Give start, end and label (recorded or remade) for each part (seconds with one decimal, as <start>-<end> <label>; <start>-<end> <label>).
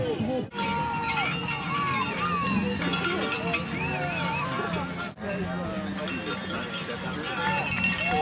0.0-8.2 recorded